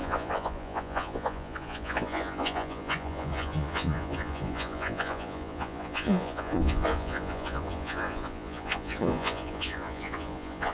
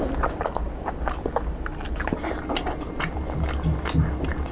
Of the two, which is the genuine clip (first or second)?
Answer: second